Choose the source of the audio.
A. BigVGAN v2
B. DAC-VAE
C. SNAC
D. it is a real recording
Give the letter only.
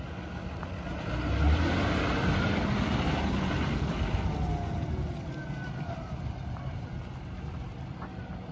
D